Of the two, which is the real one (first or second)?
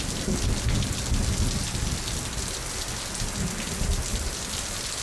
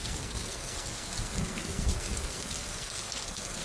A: first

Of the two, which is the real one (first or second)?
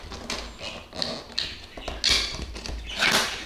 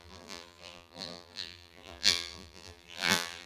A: first